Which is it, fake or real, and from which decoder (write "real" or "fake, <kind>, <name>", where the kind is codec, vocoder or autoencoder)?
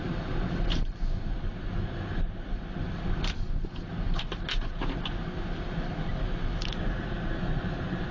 real